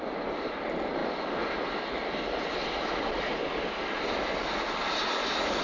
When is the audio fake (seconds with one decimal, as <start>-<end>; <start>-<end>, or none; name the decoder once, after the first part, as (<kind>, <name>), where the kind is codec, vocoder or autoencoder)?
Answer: none